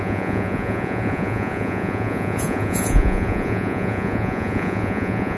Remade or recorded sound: remade